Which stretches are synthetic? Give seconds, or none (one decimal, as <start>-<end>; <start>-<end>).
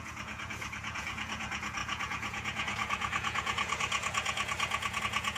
0.0-5.4